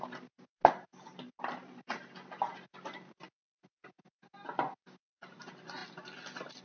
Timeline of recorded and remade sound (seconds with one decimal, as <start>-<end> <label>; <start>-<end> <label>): 0.0-6.6 recorded